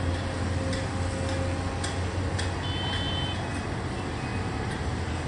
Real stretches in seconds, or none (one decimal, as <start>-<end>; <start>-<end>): 0.0-4.3